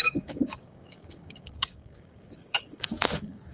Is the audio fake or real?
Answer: fake